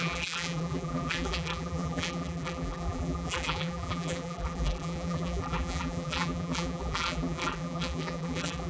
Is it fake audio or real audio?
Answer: fake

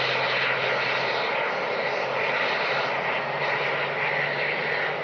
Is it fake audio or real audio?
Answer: real